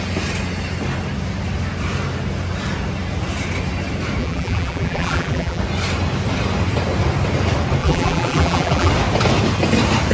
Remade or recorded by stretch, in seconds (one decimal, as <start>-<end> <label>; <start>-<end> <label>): 0.0-4.2 recorded; 4.2-5.6 remade; 5.6-7.8 recorded; 7.8-8.9 remade; 8.9-10.1 recorded